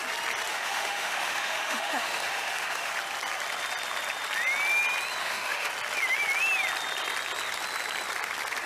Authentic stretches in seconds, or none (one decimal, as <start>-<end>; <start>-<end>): 0.0-0.5; 2.9-5.2; 5.7-8.7

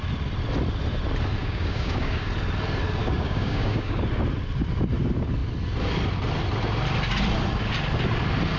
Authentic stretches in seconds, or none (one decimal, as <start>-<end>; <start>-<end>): 0.0-1.4; 2.3-3.0; 4.0-8.6

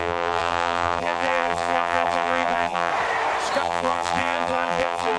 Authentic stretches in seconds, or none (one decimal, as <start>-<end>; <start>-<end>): 2.9-3.6

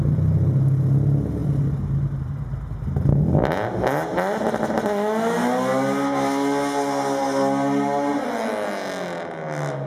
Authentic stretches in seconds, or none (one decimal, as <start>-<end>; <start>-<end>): 0.0-9.9

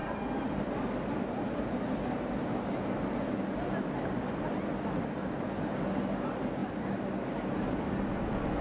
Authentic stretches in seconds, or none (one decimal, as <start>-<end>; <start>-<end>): 0.0-8.6